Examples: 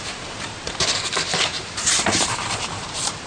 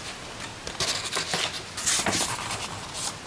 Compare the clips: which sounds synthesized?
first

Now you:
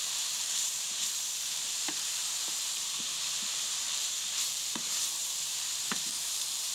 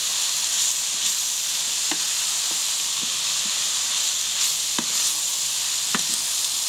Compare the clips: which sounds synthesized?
first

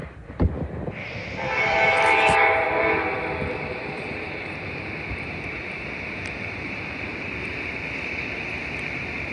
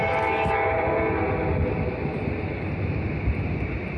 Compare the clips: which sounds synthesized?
first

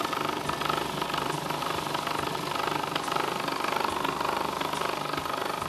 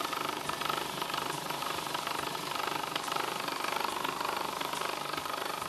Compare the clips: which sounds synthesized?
second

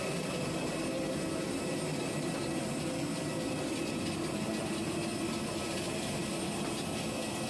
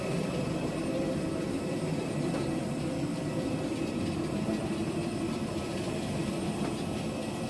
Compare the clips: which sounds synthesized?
second